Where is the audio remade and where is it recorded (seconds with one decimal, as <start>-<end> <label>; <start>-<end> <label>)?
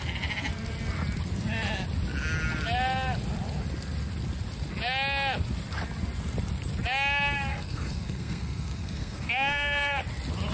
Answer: 0.0-7.5 recorded; 7.5-10.0 remade; 10.0-10.5 recorded